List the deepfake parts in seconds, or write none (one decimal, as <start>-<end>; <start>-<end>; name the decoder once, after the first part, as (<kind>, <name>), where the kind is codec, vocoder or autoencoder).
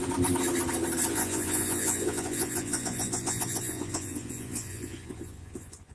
1.1-5.9 (vocoder, Vocos)